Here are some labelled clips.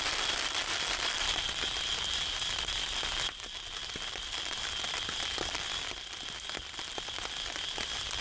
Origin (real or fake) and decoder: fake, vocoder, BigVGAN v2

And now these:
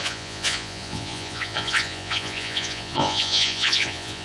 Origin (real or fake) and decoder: fake, vocoder, Vocos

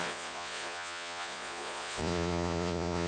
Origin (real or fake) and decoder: fake, vocoder, Vocos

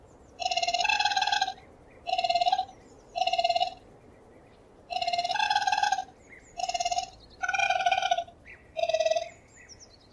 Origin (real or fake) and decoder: real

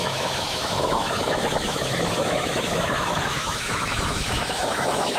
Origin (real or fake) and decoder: fake, autoencoder, DAC-VAE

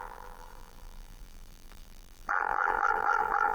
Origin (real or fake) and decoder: fake, vocoder, BigVGAN v2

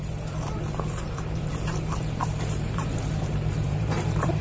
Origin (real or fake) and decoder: fake, vocoder, BigVGAN v2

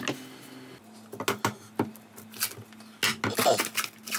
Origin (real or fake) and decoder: real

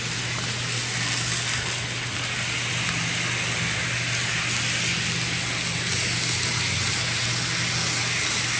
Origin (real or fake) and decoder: real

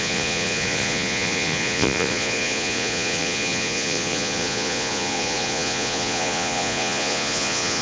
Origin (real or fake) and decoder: fake, vocoder, Vocos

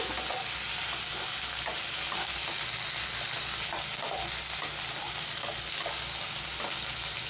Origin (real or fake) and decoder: real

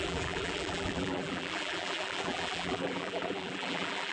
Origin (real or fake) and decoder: fake, vocoder, BigVGAN v2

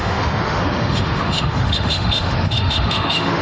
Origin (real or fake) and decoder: fake, autoencoder, DAC-VAE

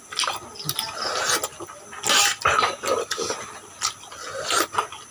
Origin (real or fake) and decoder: real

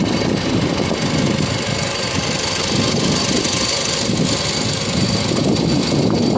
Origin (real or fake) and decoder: fake, vocoder, BigVGAN v2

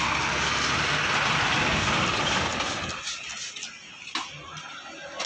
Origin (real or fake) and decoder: real